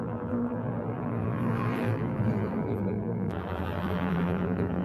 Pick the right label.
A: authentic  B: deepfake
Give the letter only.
B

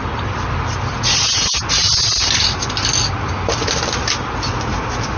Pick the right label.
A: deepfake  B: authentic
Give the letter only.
B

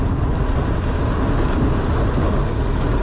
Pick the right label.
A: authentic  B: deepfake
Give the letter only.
A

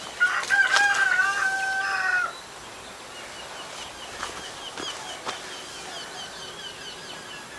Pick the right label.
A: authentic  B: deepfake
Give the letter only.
A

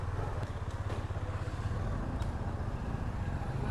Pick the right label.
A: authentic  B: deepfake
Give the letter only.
A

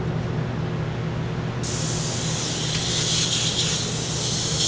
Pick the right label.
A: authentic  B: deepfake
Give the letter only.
A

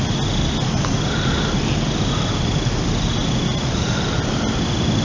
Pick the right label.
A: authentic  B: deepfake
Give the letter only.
A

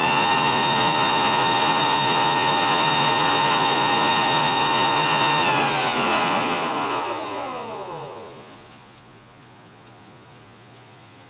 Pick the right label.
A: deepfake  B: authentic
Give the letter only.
A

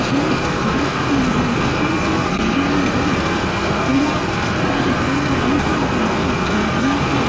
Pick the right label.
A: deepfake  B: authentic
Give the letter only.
A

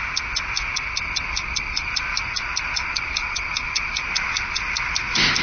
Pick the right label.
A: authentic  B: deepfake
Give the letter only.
A